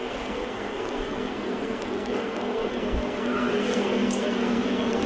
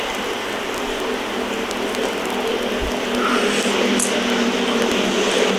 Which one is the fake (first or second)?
first